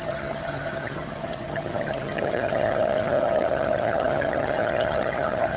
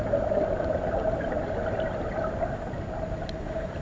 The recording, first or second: second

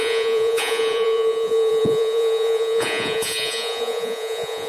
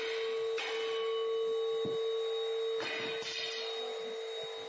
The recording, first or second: second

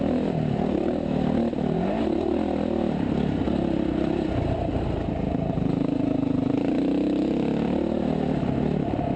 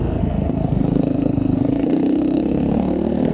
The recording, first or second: first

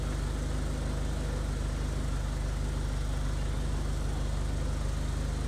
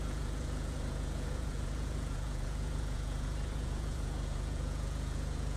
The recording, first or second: first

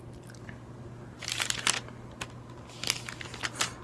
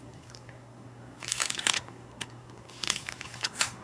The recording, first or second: first